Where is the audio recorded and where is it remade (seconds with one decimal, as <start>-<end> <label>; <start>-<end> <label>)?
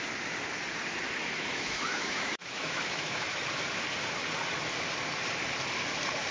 0.0-1.2 recorded; 1.2-3.4 remade; 3.4-6.3 recorded